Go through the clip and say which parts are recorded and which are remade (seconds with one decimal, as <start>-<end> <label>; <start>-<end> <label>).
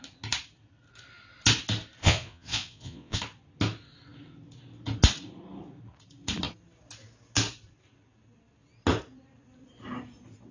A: 0.0-2.0 recorded; 2.0-3.2 remade; 3.2-10.5 recorded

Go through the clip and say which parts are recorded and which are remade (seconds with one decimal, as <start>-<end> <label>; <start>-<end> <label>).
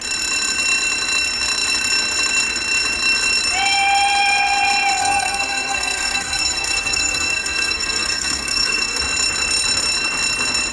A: 0.0-5.0 recorded; 5.0-9.0 remade; 9.0-10.7 recorded